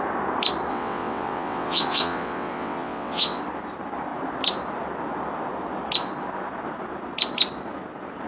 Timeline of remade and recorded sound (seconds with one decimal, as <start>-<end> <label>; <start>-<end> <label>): 0.0-0.7 recorded; 0.7-3.4 remade; 3.4-8.3 recorded